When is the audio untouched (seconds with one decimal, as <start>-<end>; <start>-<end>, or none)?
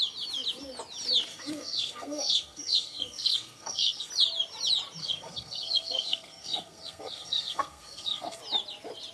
0.0-1.3; 4.1-5.0; 8.4-9.1